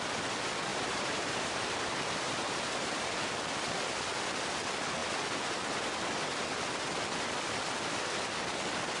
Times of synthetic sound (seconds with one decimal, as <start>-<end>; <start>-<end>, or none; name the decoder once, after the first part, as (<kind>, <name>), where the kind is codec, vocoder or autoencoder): 0.7-3.1 (vocoder, BigVGAN v2)

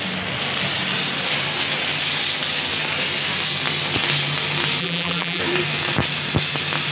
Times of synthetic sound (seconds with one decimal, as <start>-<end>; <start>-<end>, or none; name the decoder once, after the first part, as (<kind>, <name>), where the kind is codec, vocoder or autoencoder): 4.8-5.4 (vocoder, BigVGAN v2)